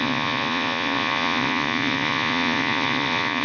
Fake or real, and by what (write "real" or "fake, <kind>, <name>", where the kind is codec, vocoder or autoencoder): fake, vocoder, Vocos